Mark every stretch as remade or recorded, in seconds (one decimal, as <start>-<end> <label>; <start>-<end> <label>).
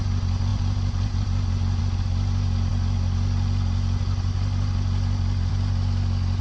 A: 0.0-6.4 recorded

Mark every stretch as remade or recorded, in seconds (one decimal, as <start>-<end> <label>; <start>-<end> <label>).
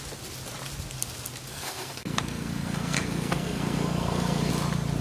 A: 0.0-1.5 recorded; 1.5-4.5 remade; 4.5-5.0 recorded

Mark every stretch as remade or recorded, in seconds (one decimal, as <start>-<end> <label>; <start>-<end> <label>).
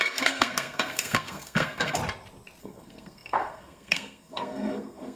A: 0.0-2.0 remade; 2.0-2.6 recorded; 2.6-5.2 remade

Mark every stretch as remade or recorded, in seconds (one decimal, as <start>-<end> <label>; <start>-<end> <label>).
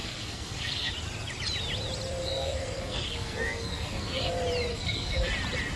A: 0.0-0.9 remade; 0.9-2.2 recorded; 2.2-4.3 remade; 4.3-4.7 recorded; 4.7-5.3 remade; 5.3-5.8 recorded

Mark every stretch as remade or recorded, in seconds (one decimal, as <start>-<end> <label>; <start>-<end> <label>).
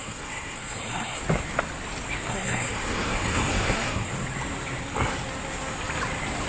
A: 0.0-1.2 remade; 1.2-2.3 recorded; 2.3-4.1 remade; 4.1-6.5 recorded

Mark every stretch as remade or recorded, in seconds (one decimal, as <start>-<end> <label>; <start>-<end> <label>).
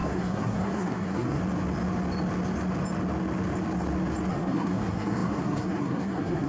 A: 0.0-1.4 remade; 1.4-4.3 recorded; 4.3-6.5 remade